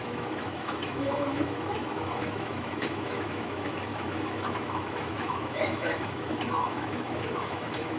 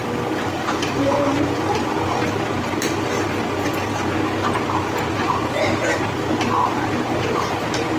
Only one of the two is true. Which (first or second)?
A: second